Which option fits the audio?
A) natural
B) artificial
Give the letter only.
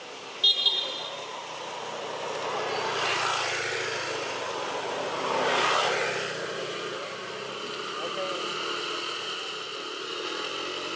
A